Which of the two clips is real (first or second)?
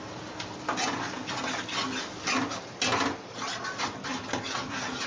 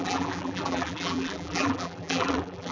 first